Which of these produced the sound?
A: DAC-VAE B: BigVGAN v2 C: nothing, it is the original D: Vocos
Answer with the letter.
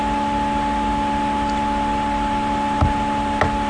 C